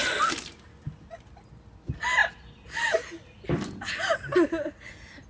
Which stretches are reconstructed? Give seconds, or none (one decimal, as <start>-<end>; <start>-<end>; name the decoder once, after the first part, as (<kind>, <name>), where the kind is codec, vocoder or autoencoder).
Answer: none